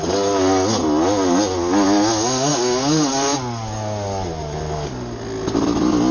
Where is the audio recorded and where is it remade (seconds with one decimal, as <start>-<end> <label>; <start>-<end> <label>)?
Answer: 0.0-6.1 recorded